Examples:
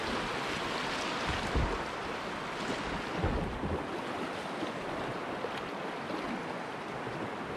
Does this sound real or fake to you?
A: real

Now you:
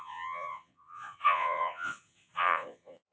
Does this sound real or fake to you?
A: fake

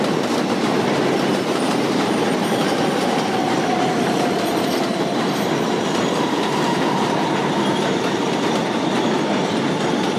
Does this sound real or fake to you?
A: fake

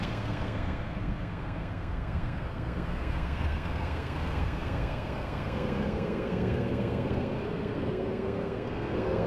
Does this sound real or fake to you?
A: fake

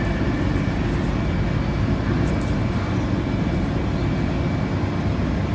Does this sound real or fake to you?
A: real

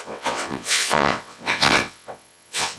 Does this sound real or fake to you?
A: fake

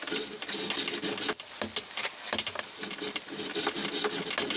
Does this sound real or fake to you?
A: real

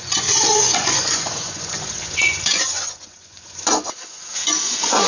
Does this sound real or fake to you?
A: fake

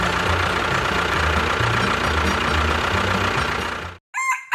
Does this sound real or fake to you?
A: real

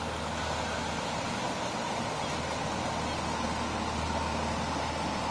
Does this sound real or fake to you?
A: real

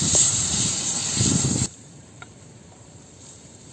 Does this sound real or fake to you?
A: fake